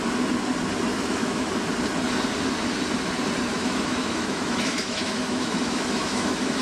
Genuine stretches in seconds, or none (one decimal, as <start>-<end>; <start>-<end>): 0.0-0.9; 1.5-3.5